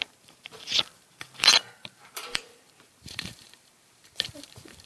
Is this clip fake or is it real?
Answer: fake